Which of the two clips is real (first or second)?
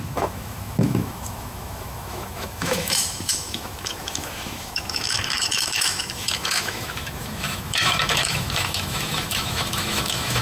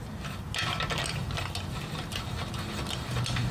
second